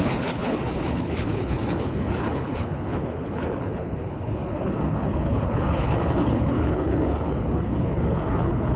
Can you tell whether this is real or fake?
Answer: fake